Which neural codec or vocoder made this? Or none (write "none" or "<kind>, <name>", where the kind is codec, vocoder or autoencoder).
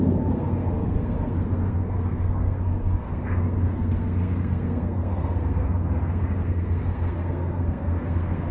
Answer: codec, SNAC